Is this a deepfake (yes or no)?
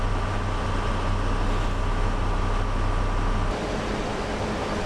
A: no